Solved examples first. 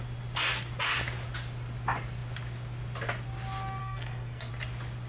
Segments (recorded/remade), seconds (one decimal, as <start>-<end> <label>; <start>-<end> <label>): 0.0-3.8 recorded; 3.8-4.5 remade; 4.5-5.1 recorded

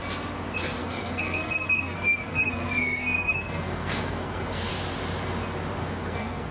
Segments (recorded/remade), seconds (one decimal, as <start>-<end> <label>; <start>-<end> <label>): 0.0-0.8 recorded; 0.8-4.7 remade; 4.7-5.8 recorded; 5.8-6.5 remade

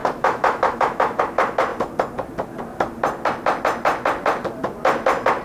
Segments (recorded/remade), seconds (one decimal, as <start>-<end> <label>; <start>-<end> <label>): 0.0-1.2 remade; 1.2-5.4 recorded